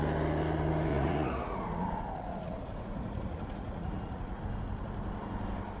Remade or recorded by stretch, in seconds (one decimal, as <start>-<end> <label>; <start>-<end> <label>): 0.0-0.9 recorded; 0.9-4.4 remade; 4.4-5.8 recorded